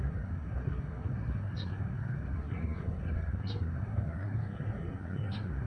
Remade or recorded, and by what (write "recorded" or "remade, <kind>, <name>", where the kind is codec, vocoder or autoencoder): remade, codec, SNAC